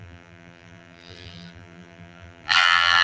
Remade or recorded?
remade